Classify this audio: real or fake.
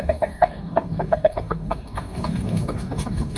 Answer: fake